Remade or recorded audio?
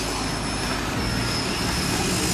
recorded